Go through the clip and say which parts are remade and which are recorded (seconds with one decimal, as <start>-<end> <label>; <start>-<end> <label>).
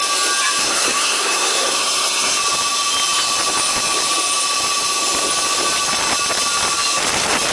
0.0-0.6 recorded; 0.6-2.4 remade; 2.4-7.5 recorded